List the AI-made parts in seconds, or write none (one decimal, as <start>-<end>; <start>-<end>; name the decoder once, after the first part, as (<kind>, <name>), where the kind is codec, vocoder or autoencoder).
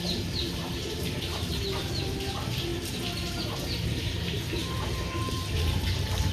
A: 0.0-2.7 (vocoder, BigVGAN v2); 3.3-6.3